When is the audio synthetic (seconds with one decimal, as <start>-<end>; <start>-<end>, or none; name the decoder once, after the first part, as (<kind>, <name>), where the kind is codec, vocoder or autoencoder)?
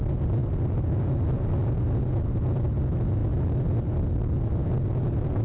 none